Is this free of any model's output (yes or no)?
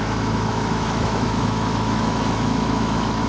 no